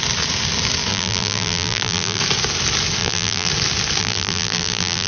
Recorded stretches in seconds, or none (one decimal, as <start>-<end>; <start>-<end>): 0.0-0.9; 2.2-3.0; 3.5-4.0